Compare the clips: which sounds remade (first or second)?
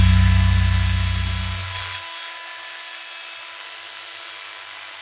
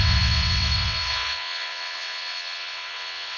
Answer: second